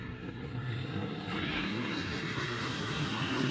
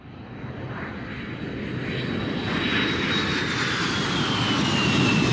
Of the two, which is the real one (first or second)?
second